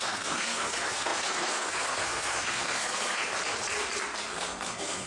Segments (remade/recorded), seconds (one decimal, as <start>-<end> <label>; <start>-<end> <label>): 0.0-3.3 remade; 3.3-4.2 recorded; 4.2-5.1 remade